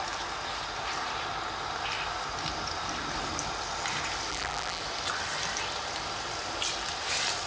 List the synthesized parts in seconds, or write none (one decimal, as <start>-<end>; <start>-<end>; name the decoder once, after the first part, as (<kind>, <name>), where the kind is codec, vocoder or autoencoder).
4.3-4.8 (vocoder, BigVGAN v2)